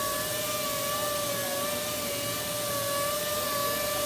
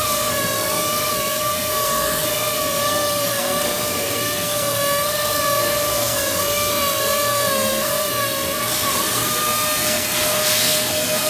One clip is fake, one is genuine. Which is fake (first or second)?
second